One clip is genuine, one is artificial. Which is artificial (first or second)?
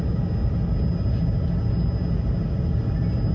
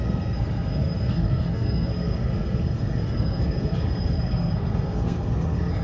second